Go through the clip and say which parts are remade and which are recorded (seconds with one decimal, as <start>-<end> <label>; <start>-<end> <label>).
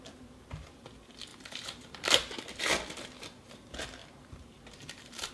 0.0-1.3 recorded; 1.3-1.9 remade; 1.9-4.0 recorded; 4.0-5.3 remade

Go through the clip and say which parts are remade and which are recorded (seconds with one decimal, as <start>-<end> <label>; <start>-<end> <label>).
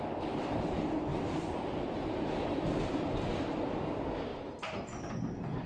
0.0-1.1 recorded; 1.1-2.1 remade; 2.1-4.3 recorded; 4.3-5.1 remade; 5.1-5.7 recorded